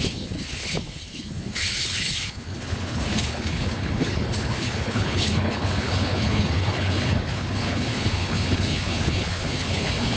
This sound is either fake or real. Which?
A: fake